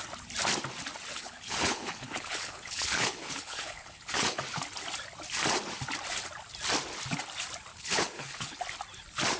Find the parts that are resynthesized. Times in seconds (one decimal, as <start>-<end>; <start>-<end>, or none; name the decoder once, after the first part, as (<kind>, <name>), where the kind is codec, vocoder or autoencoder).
1.1-4.4 (codec, HILCodec); 7.7-8.6